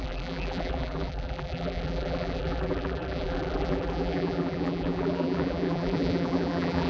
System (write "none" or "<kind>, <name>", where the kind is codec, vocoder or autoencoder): vocoder, BigVGAN v2